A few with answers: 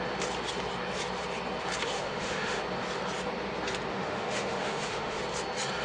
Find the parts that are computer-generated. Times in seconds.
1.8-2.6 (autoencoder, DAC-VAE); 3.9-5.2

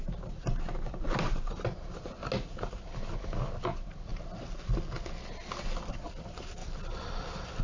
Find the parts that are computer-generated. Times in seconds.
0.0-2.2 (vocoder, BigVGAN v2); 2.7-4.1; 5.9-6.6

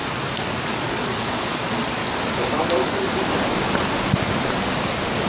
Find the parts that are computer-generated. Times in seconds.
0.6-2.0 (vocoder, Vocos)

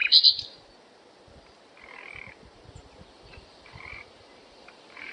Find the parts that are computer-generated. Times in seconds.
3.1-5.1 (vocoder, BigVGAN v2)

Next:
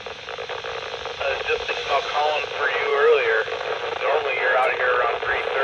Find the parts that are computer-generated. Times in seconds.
1.8-2.4 (autoencoder, DAC-VAE); 2.9-4.8

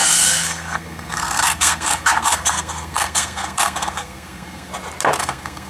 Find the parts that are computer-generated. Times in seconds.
0.0-4.7 (codec, SNAC); 5.2-5.7

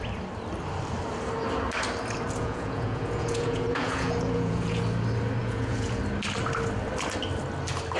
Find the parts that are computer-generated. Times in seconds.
2.4-4.8 (vocoder, Vocos); 5.4-6.0